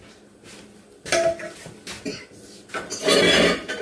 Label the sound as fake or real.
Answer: real